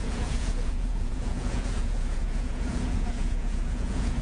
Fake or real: fake